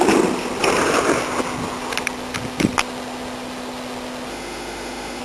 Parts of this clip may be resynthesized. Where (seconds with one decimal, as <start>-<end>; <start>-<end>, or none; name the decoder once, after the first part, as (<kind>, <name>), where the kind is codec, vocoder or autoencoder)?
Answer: 4.3-5.2 (autoencoder, DAC-VAE)